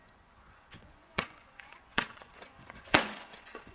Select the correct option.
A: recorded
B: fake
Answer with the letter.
B